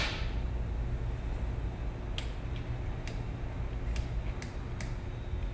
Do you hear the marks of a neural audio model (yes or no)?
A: no